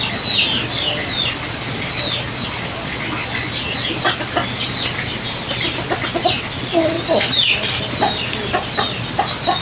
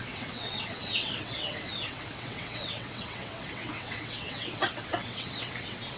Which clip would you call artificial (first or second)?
second